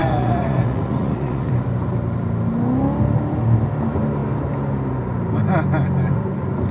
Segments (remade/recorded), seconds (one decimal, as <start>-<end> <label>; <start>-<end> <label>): 0.0-1.5 remade; 1.5-6.7 recorded